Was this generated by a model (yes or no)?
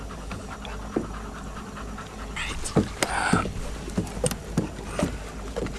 no